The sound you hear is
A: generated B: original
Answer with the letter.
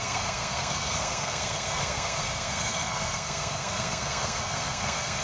A